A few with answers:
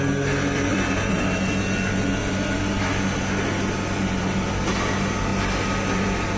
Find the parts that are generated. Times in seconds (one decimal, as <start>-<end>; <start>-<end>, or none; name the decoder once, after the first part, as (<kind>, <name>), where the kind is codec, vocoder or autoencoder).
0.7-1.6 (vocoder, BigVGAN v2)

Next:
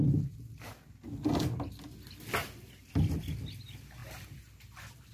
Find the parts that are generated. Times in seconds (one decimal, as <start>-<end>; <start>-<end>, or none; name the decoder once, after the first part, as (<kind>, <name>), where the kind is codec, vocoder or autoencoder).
2.4-3.2 (vocoder, BigVGAN v2)

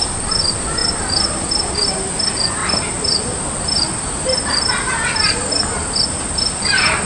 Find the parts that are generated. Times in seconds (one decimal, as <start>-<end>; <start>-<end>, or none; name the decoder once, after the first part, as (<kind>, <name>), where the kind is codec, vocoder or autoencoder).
none

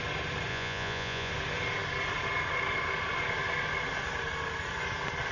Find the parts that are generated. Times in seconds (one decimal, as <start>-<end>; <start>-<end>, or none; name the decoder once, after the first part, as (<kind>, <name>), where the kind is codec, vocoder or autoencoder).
0.5-1.3 (vocoder, Vocos)

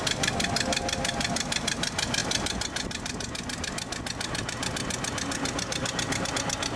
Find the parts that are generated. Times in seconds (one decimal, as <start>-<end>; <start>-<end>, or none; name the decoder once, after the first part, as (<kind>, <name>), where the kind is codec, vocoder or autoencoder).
none

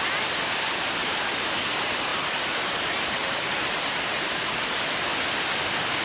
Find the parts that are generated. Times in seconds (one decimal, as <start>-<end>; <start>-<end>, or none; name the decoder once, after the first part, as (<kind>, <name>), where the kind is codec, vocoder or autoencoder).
2.1-4.4 (vocoder, BigVGAN v2)